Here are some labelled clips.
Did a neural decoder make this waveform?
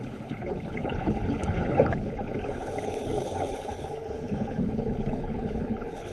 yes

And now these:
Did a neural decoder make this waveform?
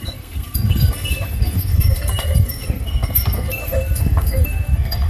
yes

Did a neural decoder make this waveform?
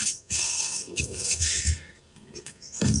yes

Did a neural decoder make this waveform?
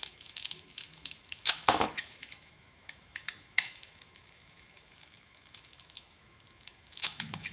yes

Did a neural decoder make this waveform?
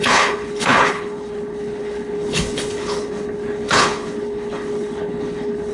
yes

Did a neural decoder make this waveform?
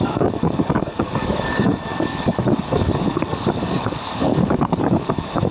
yes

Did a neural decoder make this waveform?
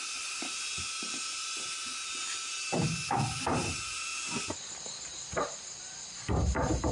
no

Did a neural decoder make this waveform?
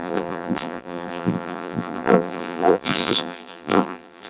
yes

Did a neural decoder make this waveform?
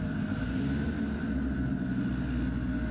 no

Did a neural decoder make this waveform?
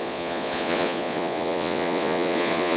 yes